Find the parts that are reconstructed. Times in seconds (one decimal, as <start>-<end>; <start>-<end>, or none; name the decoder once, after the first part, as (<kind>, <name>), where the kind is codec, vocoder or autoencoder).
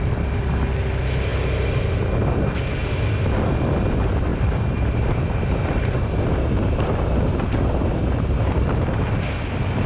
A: 4.3-9.1 (vocoder, BigVGAN v2)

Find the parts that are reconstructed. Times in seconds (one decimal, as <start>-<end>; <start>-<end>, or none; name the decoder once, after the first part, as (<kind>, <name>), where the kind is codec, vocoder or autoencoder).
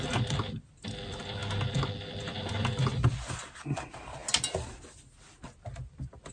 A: 0.0-1.4 (vocoder, BigVGAN v2); 2.0-4.2